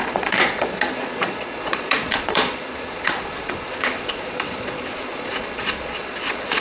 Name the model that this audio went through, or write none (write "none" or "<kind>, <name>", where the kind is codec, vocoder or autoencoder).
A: vocoder, Vocos